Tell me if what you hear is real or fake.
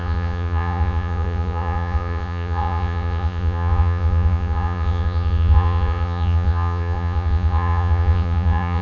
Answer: fake